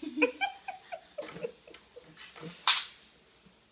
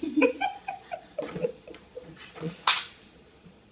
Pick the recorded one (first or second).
first